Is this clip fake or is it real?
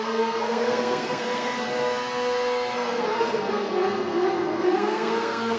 fake